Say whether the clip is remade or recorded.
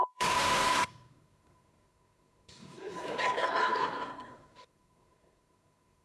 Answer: remade